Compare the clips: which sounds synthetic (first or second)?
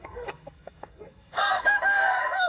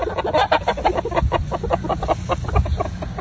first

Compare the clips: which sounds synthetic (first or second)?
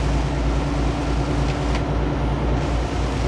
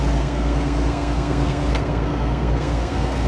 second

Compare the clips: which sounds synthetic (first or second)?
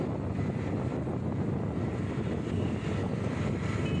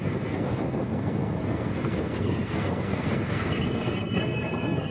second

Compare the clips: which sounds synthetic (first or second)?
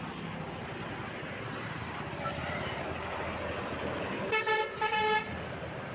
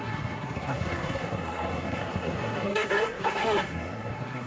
second